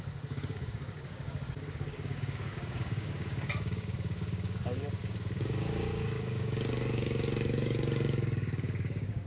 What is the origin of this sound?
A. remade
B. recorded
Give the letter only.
A